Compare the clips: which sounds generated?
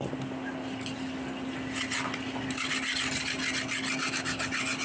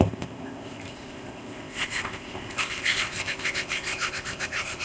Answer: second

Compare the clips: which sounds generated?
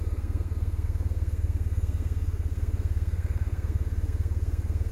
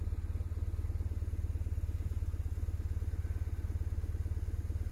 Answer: first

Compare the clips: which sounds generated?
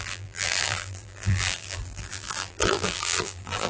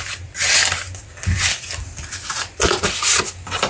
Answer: first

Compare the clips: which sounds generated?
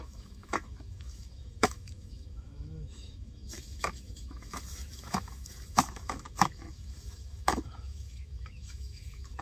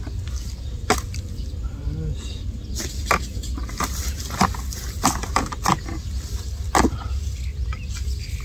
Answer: first